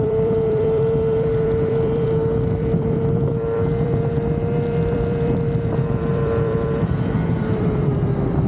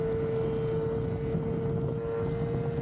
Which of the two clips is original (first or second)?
second